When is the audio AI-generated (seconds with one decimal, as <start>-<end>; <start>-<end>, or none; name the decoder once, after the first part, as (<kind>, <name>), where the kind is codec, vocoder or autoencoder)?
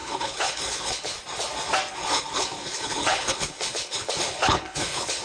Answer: 0.0-1.1 (codec, HILCodec); 1.9-5.2